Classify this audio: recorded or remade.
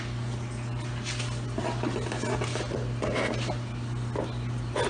recorded